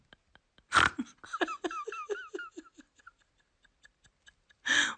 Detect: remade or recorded recorded